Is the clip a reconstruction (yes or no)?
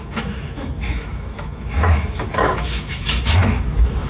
yes